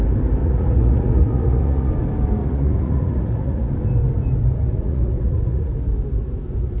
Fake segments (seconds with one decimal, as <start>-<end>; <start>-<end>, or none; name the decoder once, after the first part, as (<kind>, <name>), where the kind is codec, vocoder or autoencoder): 0.4-1.9 (vocoder, Vocos); 2.4-3.7; 4.6-5.7